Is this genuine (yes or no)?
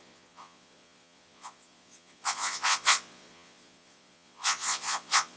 no